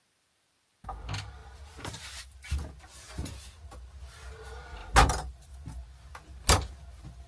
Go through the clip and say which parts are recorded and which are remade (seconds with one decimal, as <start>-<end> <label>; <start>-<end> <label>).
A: 0.0-1.4 recorded; 1.4-2.2 remade; 2.2-4.8 recorded; 4.8-5.5 remade; 5.5-7.3 recorded